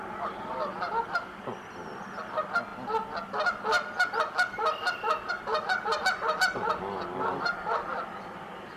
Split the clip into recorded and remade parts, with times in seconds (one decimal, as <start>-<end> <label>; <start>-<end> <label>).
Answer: 0.0-8.8 recorded